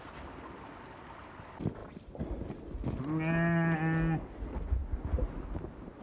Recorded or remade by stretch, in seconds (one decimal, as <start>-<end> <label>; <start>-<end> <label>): 0.0-6.0 recorded